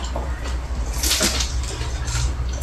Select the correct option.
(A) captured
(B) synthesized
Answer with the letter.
A